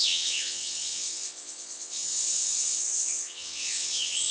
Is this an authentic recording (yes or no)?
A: no